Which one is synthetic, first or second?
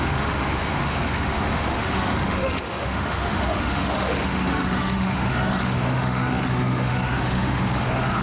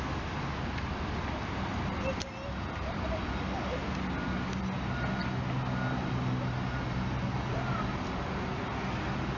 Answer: first